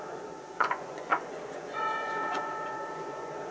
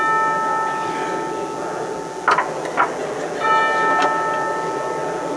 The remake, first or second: first